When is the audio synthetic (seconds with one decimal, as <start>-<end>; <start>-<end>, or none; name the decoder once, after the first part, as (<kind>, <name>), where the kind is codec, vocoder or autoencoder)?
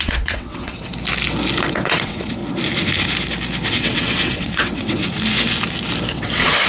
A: 0.0-0.9 (vocoder, WaveNeXt); 1.7-2.4; 3.7-5.0; 6.1-6.7